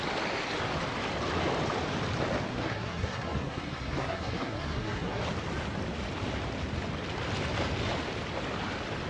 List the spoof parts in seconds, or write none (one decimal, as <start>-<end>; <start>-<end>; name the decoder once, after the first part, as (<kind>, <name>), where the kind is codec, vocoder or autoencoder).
2.5-5.2 (codec, SNAC)